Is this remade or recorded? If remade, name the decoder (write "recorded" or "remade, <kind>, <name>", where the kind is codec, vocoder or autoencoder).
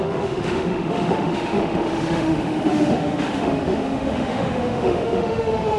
remade, autoencoder, DAC-VAE